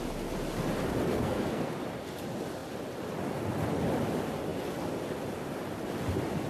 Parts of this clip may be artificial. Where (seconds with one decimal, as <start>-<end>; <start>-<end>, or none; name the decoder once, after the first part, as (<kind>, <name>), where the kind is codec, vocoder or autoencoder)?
1.1-1.8 (codec, SNAC)